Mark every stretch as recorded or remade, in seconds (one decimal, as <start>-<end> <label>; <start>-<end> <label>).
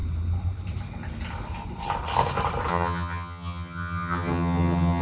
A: 0.0-2.7 recorded; 2.7-5.0 remade